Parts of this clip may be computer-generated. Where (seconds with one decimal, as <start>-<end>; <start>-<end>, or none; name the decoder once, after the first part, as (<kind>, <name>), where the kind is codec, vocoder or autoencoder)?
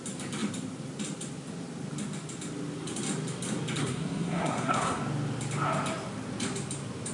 3.8-5.0 (codec, SNAC)